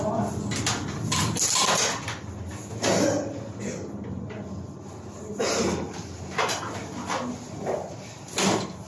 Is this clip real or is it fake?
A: real